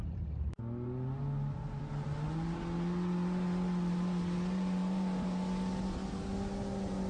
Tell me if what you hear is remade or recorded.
recorded